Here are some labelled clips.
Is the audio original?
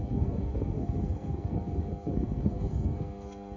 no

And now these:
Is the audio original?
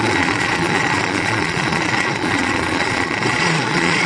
no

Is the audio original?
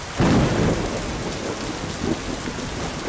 yes